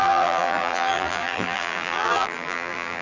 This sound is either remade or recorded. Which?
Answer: remade